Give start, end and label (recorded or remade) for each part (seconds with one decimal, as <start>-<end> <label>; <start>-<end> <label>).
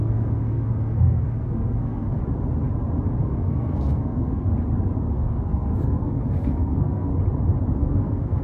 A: 0.0-2.2 remade; 2.2-3.2 recorded; 3.2-4.5 remade; 4.5-5.1 recorded; 5.1-7.1 remade; 7.1-7.8 recorded; 7.8-8.4 remade